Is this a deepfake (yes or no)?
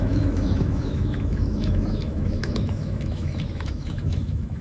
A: yes